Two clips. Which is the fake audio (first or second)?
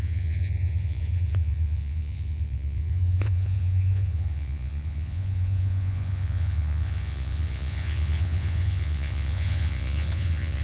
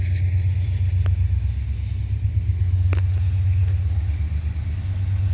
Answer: first